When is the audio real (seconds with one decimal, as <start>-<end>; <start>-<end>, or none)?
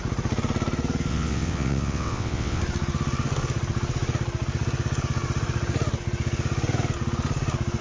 0.0-1.1; 2.6-7.8